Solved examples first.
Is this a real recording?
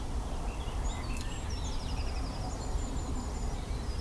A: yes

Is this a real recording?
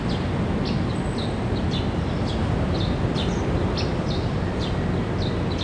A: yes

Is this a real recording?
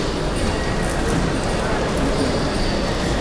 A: yes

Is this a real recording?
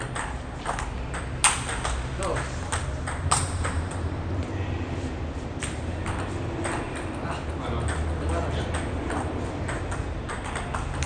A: yes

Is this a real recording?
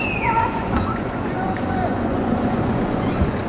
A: no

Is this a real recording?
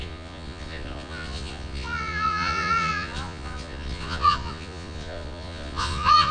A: no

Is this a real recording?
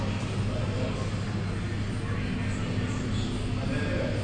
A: yes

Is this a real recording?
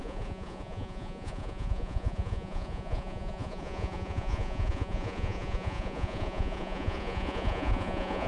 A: no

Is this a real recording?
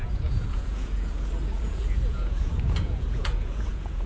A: no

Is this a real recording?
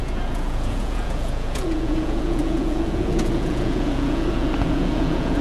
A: no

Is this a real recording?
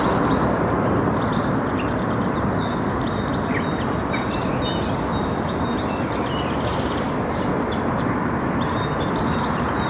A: yes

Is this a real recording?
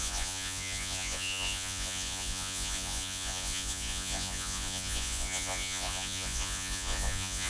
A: no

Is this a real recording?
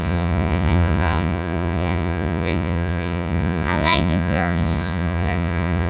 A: no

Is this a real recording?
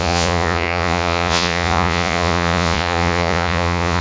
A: no